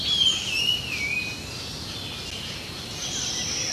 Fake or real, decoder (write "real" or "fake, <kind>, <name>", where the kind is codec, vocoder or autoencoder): real